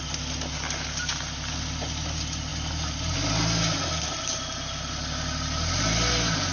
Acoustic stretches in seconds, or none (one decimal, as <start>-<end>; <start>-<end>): 0.0-6.5